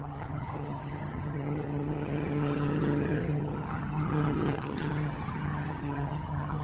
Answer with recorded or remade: remade